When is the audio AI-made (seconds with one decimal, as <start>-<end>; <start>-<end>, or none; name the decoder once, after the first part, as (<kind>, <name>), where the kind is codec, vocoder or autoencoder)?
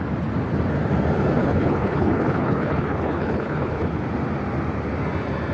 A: 1.4-4.0 (codec, HILCodec)